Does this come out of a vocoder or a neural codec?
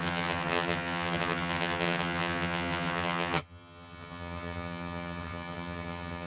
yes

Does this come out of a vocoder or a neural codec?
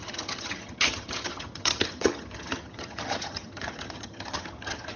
yes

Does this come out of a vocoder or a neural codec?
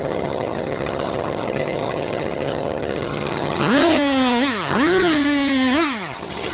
yes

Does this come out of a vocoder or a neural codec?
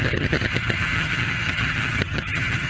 yes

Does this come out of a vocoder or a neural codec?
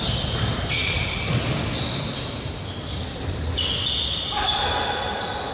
no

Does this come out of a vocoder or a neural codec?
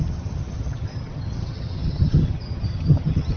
yes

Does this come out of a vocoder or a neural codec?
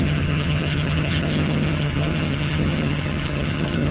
yes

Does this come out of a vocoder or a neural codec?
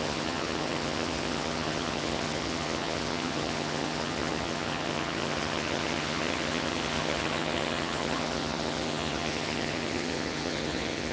yes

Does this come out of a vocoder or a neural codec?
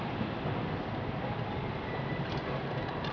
no